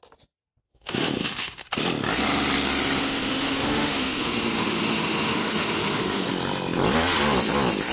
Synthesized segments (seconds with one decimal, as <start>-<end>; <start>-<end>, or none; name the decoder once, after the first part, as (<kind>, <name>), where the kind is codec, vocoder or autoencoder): 0.6-1.7 (autoencoder, DAC-VAE); 3.0-6.3